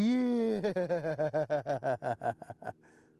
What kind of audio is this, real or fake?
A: real